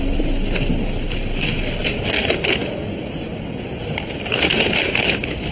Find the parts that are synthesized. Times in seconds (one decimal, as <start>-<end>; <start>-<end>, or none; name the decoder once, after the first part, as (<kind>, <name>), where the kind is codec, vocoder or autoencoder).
none